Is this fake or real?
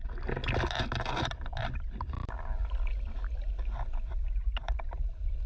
real